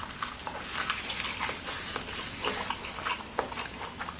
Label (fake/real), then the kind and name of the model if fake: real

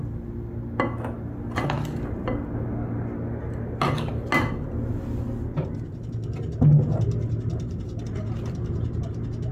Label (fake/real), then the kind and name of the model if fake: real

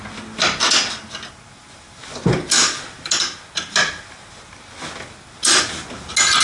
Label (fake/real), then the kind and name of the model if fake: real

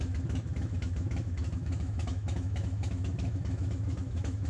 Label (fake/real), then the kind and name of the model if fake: fake, autoencoder, DAC-VAE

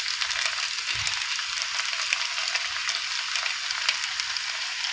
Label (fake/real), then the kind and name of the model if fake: real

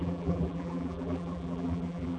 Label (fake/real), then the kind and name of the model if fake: fake, vocoder, BigVGAN v2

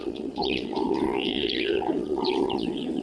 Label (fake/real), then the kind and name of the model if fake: fake, vocoder, Vocos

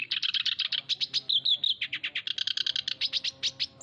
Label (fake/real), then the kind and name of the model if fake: real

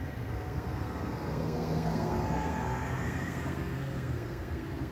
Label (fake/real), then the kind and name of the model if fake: fake, codec, SNAC